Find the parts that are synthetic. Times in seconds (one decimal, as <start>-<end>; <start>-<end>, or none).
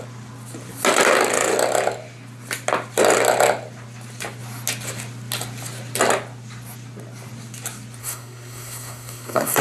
8.0-9.6